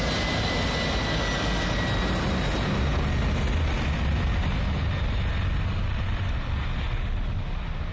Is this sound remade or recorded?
recorded